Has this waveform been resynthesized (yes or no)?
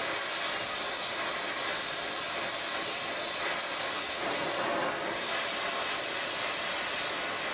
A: no